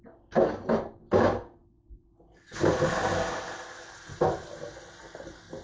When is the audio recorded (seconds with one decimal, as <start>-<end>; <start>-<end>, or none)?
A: 0.0-5.6